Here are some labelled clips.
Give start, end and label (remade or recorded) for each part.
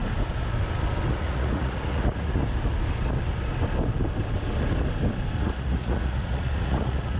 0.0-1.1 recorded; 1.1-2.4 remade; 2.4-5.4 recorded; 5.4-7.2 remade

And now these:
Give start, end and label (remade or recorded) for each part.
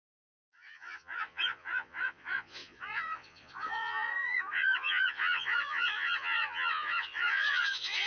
0.0-8.1 remade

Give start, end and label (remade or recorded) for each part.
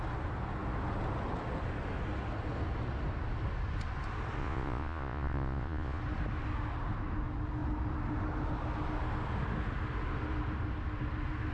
0.0-4.4 recorded; 4.4-6.0 remade; 6.0-11.5 recorded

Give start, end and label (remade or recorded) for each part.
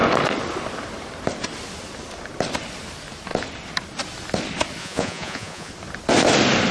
0.0-4.8 recorded; 4.8-5.7 remade; 5.7-6.7 recorded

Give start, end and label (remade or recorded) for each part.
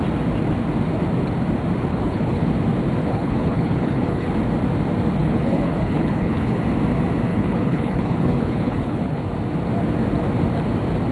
0.0-1.9 recorded; 1.9-2.5 remade; 2.5-3.0 recorded; 3.0-4.3 remade; 4.3-5.2 recorded; 5.2-6.6 remade; 6.6-7.3 recorded; 7.3-9.2 remade; 9.2-11.1 recorded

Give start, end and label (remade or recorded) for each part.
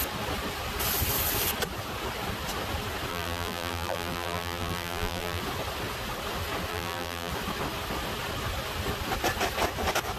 0.0-3.1 recorded; 3.1-5.4 remade; 5.4-6.7 recorded; 6.7-7.3 remade; 7.3-10.2 recorded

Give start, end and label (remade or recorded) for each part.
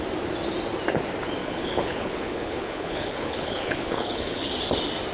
0.0-1.4 recorded; 1.4-4.5 remade; 4.5-5.1 recorded